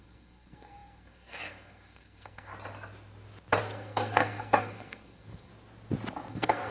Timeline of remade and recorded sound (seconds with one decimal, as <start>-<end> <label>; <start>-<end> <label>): 0.0-2.5 remade; 2.5-3.6 recorded; 3.6-5.5 remade; 5.5-6.3 recorded; 6.3-6.7 remade